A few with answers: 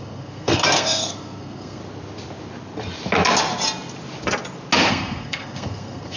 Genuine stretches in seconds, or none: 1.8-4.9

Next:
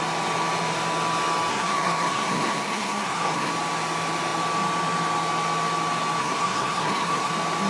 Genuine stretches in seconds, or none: 0.0-1.5; 3.5-6.2; 7.3-7.7

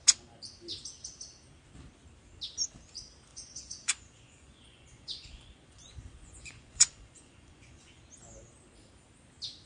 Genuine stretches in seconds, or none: 0.0-3.3; 8.0-9.7

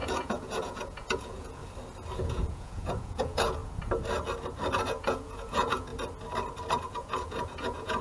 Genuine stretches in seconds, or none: 1.6-2.2; 3.6-4.7; 5.9-6.9